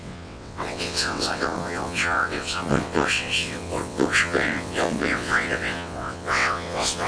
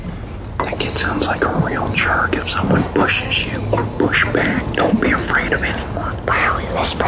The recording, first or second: second